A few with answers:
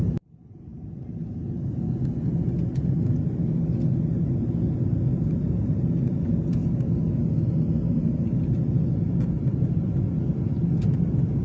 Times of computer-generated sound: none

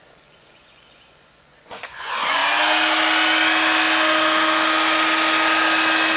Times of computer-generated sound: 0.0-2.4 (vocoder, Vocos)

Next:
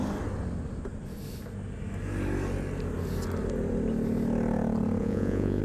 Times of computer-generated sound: 5.0-5.6 (vocoder, Vocos)